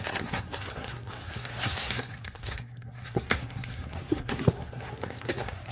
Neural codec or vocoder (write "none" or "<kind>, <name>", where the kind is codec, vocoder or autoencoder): codec, SNAC